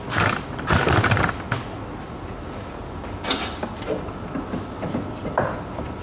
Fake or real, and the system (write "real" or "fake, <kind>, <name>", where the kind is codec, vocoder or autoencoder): real